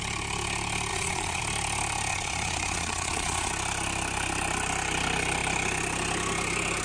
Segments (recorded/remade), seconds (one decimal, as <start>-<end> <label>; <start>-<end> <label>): 0.0-0.9 recorded; 0.9-1.4 remade; 1.4-2.1 recorded; 2.1-3.5 remade; 3.5-6.8 recorded